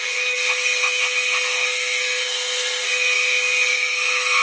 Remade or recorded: remade